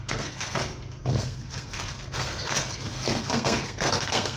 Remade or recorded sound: remade